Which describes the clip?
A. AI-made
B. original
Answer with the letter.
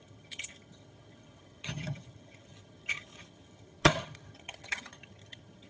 A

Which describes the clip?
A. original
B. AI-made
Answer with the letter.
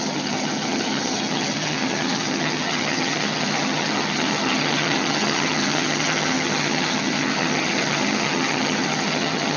B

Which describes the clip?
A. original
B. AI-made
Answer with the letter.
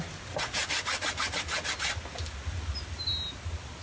A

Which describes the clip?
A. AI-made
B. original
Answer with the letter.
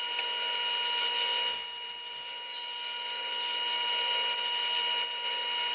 B